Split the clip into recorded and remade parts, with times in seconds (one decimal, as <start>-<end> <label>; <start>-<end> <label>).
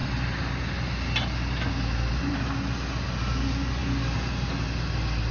0.0-5.3 recorded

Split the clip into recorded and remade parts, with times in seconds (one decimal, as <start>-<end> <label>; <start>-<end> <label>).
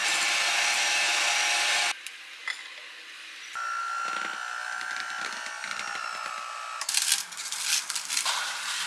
0.0-8.9 recorded